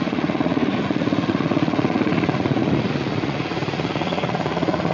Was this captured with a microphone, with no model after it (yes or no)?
no